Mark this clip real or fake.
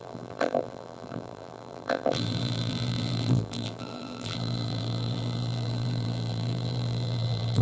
fake